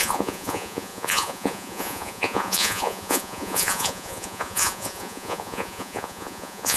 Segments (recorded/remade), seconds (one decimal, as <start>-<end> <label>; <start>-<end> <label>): 0.0-6.8 remade